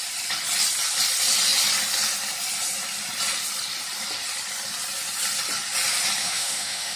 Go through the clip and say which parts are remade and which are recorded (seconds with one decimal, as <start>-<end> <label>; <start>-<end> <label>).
0.0-6.2 recorded; 6.2-7.0 remade